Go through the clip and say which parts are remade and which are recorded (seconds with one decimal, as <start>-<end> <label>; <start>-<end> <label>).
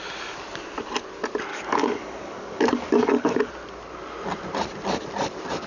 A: 0.0-1.5 recorded; 1.5-3.5 remade; 3.5-5.7 recorded